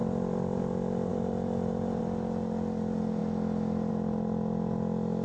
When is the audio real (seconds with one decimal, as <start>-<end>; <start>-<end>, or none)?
0.6-1.1; 2.0-5.2